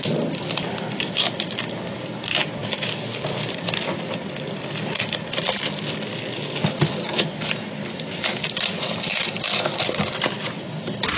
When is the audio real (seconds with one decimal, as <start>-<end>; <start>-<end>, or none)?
0.0-11.2

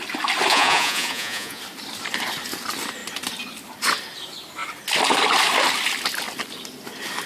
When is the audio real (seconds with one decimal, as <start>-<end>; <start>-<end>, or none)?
0.0-0.5; 1.6-7.3

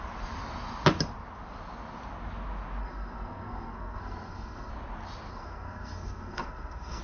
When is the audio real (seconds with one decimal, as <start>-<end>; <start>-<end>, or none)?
0.0-2.8; 4.7-5.3

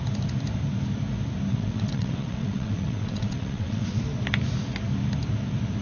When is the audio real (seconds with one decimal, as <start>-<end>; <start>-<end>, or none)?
0.0-1.5; 4.0-5.8

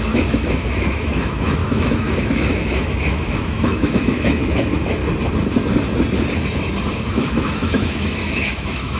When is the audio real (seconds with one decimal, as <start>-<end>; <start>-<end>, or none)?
5.0-7.1

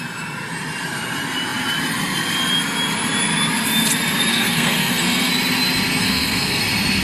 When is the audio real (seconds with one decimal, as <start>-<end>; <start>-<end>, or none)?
0.0-4.3; 5.3-6.0; 6.6-7.0